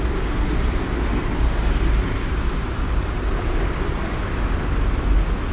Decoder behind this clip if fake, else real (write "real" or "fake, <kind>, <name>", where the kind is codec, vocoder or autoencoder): real